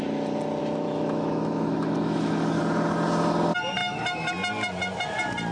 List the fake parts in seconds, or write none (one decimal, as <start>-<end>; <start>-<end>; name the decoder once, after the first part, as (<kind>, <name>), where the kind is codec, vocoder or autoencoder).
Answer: 0.6-2.6 (autoencoder, DAC-VAE); 3.8-4.3